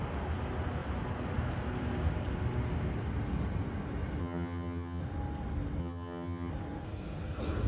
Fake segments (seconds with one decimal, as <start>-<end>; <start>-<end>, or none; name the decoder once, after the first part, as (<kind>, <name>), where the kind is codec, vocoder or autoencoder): 4.2-5.0 (vocoder, HiFi-GAN); 5.8-6.5